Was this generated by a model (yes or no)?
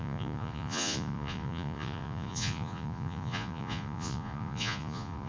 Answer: yes